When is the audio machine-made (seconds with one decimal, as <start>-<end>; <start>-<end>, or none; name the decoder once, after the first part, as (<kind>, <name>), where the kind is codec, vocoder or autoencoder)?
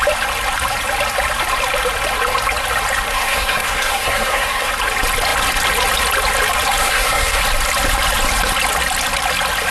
3.1-4.7 (codec, SNAC); 6.8-7.4